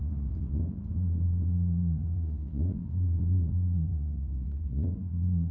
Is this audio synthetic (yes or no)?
yes